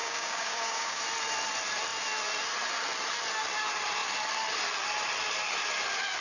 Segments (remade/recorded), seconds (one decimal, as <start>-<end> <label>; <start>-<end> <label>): 0.0-1.0 remade; 1.0-6.2 recorded